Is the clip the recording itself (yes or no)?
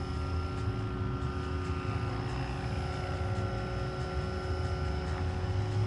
yes